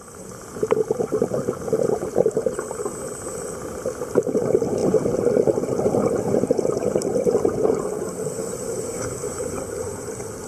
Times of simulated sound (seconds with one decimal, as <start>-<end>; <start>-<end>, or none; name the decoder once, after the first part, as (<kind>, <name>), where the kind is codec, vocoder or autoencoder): 0.0-10.5 (vocoder, BigVGAN v2)